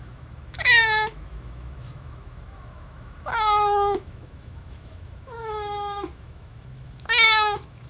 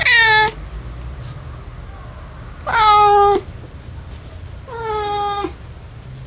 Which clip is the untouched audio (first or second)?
second